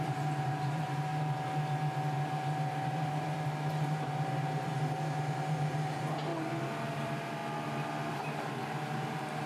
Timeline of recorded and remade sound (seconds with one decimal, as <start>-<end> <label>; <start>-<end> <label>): 0.0-1.1 remade; 1.1-2.7 recorded; 2.7-6.3 remade; 6.3-6.9 recorded; 6.9-7.4 remade; 7.4-8.1 recorded; 8.1-9.5 remade